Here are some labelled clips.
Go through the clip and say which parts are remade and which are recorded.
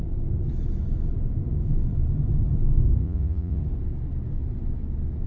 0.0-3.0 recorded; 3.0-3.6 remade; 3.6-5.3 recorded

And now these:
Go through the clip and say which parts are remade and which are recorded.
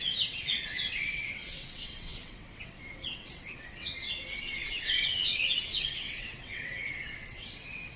0.0-8.0 remade